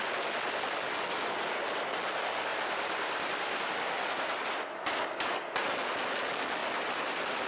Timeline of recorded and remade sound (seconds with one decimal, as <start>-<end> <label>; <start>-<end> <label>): 0.0-2.5 recorded; 2.5-3.7 remade; 3.7-6.6 recorded; 6.6-7.5 remade